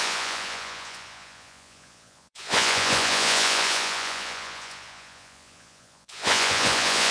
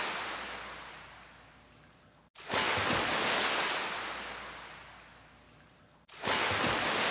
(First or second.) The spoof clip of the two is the first